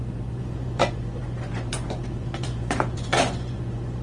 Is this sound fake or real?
fake